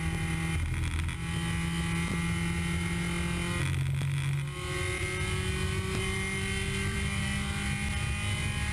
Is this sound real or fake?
real